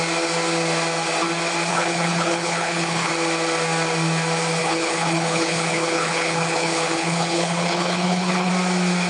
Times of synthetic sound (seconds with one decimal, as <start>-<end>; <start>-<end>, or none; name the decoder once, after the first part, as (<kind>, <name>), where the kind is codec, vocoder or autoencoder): 1.7-3.1 (codec, HILCodec); 4.6-8.5